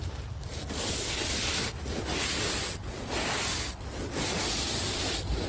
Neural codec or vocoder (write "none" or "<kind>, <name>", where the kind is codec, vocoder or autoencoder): none